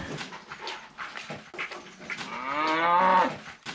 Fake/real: real